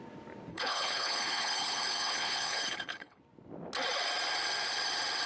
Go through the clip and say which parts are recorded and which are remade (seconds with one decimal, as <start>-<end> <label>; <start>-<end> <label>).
0.0-0.5 recorded; 0.5-3.2 remade; 3.2-5.3 recorded